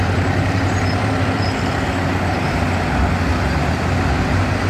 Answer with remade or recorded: recorded